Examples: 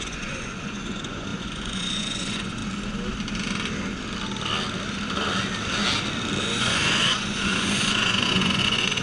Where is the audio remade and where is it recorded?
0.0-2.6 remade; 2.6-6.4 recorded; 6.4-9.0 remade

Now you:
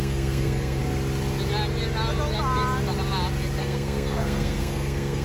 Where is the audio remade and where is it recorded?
0.0-0.8 remade; 0.8-3.6 recorded; 3.6-5.2 remade

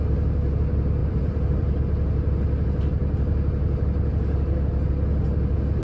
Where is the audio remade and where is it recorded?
0.0-1.0 recorded; 1.0-1.8 remade; 1.8-5.8 recorded

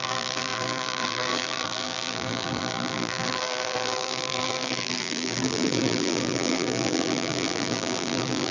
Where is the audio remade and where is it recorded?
0.0-8.5 remade

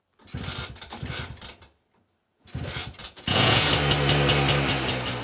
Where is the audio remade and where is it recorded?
0.0-3.0 recorded; 3.0-3.7 remade; 3.7-5.2 recorded